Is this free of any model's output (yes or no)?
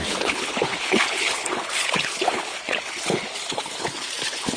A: no